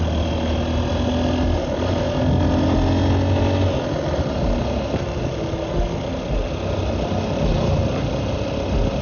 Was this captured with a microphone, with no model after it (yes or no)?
yes